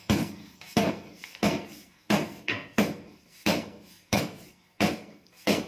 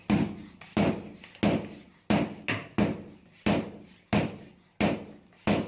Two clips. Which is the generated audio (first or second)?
first